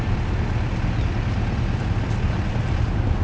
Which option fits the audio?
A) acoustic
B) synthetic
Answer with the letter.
A